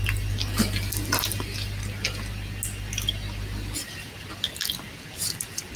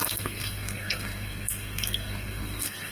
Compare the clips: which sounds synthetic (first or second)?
second